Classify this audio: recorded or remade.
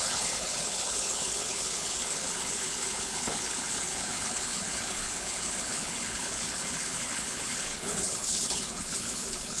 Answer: remade